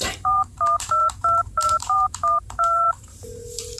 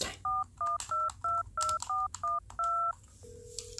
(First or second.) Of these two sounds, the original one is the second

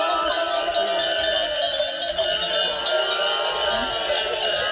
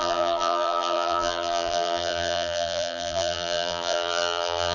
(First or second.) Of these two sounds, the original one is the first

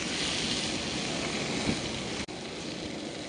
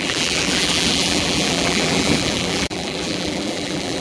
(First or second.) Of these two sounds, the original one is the first